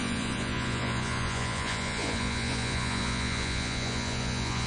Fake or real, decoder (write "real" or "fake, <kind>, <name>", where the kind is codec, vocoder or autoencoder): fake, vocoder, Vocos